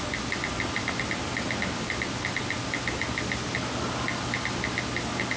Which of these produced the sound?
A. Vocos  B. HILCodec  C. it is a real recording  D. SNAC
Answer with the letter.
C